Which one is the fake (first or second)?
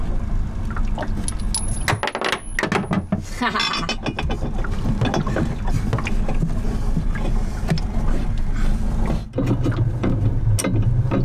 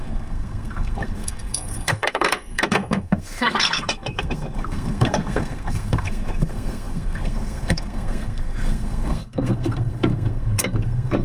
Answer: second